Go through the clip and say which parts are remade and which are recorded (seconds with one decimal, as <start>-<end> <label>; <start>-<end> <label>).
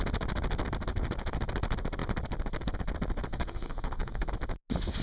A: 0.0-3.3 recorded; 3.3-4.3 remade; 4.3-5.0 recorded